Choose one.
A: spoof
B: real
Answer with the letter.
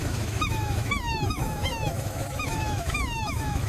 A